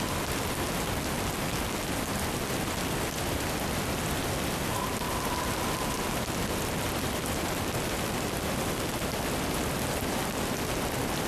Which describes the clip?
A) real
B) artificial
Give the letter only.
A